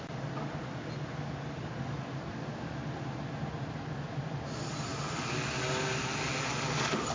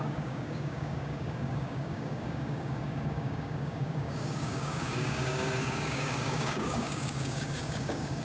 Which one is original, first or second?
first